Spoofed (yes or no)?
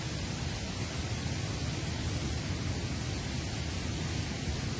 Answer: no